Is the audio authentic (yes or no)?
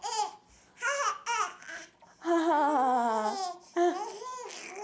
yes